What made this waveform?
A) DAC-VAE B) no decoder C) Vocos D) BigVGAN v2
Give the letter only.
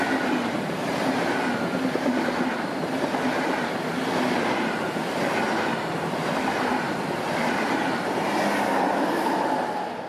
B